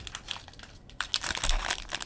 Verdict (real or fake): real